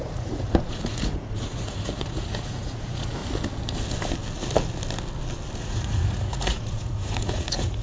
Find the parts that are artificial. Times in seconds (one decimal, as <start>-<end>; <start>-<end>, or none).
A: 0.0-3.2; 5.6-7.8